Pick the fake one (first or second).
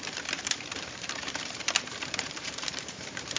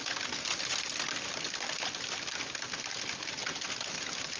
first